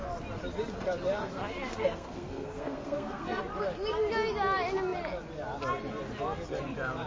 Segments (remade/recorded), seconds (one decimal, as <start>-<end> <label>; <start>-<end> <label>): 0.0-1.2 recorded; 1.2-3.4 remade; 3.4-7.1 recorded